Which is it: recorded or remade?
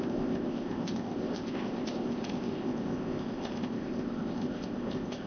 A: remade